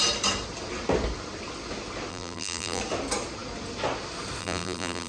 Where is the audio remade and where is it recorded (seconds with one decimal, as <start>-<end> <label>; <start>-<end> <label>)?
0.0-2.1 recorded; 2.1-2.8 remade; 2.8-4.4 recorded; 4.4-5.1 remade